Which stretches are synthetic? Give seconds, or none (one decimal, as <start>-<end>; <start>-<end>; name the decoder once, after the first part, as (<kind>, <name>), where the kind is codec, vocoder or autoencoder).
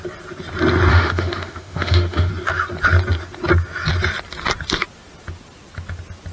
0.9-2.3 (autoencoder, DAC-VAE)